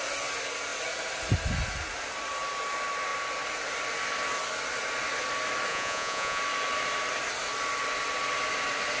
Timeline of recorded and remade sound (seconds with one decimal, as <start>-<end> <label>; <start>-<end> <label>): 0.0-5.7 recorded; 5.7-6.4 remade; 6.4-9.0 recorded